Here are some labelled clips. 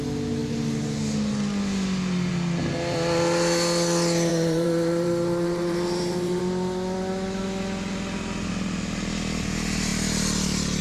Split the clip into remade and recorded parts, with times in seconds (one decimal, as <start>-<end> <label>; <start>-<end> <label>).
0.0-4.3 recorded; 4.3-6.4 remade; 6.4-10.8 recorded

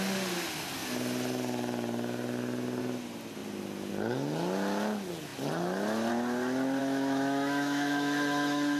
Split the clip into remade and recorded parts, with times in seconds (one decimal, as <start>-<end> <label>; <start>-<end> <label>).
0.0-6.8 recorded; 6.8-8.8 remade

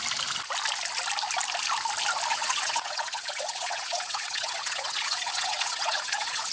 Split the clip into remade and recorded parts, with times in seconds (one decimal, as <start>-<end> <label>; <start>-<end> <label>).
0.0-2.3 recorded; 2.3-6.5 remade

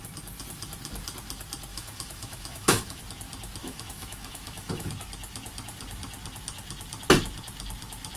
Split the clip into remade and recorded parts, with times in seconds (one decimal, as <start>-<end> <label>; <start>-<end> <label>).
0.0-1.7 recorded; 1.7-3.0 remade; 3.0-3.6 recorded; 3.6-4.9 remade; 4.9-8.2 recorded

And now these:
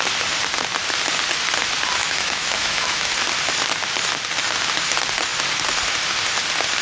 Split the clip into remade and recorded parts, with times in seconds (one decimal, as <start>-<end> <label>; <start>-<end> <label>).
0.0-2.0 recorded; 2.0-3.1 remade; 3.1-6.8 recorded

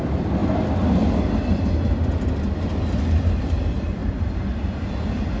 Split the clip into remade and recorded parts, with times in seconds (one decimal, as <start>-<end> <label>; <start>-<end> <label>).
0.0-5.4 recorded

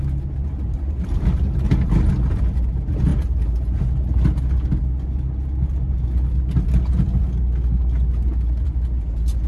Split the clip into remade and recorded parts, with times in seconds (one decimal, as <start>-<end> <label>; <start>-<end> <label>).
0.0-9.5 recorded

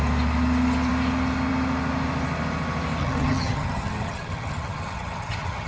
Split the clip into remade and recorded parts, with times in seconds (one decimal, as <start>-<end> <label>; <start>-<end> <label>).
0.0-3.0 recorded; 3.0-5.7 remade